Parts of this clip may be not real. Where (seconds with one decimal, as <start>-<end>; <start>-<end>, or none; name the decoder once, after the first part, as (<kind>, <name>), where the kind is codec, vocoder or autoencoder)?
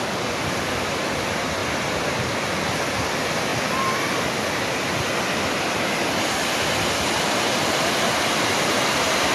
none